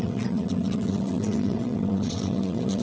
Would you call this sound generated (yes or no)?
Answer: yes